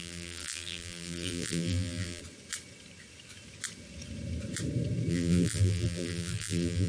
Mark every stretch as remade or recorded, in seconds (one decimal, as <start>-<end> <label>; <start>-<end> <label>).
0.0-2.2 remade; 2.2-5.1 recorded; 5.1-6.9 remade